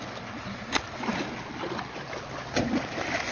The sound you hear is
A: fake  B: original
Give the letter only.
B